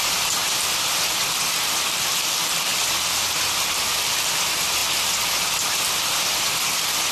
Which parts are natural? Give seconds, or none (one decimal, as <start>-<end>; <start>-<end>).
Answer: 0.0-7.1